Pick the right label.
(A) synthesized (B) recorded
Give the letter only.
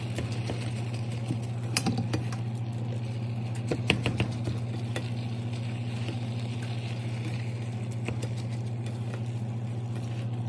B